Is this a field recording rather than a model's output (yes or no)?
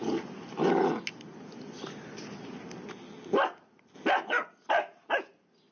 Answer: yes